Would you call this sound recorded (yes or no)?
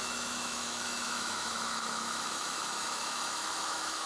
no